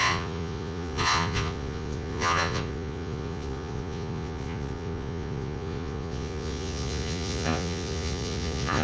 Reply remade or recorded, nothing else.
remade